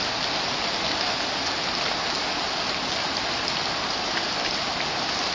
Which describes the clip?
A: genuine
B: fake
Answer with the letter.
A